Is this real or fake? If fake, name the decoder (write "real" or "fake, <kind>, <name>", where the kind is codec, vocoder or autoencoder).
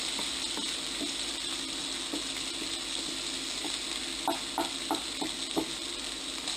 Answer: real